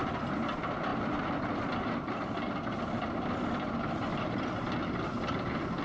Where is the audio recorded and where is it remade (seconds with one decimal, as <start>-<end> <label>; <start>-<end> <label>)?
0.0-5.8 recorded

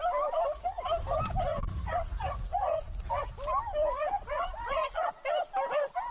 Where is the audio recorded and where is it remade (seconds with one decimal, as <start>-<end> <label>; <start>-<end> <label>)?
0.0-1.5 recorded; 1.5-3.3 remade; 3.3-3.8 recorded; 3.8-5.1 remade; 5.1-6.1 recorded